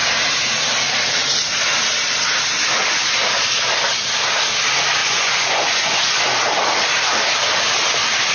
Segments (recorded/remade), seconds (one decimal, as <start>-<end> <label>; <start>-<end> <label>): 0.0-5.0 recorded; 5.0-6.2 remade; 6.2-8.3 recorded